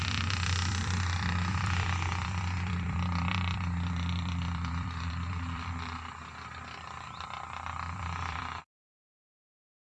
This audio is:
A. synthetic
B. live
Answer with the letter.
A